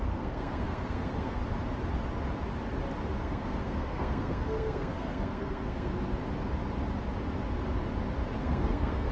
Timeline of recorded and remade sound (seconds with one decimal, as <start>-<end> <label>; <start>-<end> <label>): 0.0-1.4 remade; 1.4-3.2 recorded; 3.2-5.9 remade; 5.9-8.4 recorded; 8.4-9.1 remade

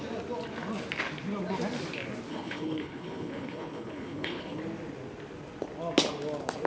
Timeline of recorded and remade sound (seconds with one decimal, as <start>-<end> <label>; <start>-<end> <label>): 0.0-2.3 recorded; 2.3-4.6 remade; 4.6-6.7 recorded